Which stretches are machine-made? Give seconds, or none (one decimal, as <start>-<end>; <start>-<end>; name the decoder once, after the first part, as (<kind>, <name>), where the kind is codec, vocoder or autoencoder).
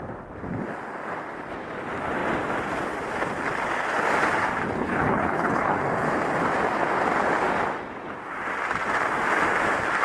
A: 4.8-5.8 (codec, HILCodec)